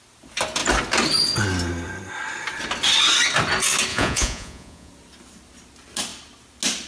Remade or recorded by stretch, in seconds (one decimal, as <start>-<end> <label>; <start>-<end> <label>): 0.0-3.9 recorded; 3.9-4.9 remade; 4.9-6.9 recorded